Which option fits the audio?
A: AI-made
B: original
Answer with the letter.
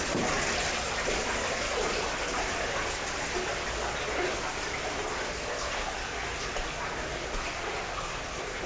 B